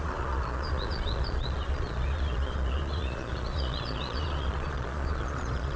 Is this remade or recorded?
remade